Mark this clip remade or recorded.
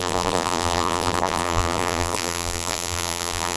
remade